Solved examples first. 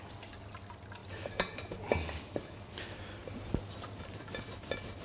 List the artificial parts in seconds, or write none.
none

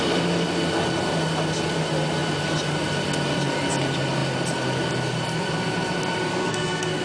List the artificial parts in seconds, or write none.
6.3-7.0 (codec, SNAC)

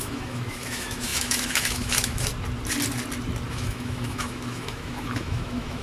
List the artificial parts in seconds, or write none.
0.0-2.3 (autoencoder, DAC-VAE); 3.5-5.8

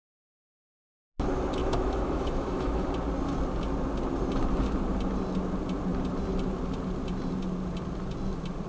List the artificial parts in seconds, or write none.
1.6-2.8 (autoencoder, DAC-VAE)